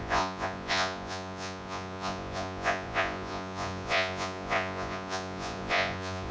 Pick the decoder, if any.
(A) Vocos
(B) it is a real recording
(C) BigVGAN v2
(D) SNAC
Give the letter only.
A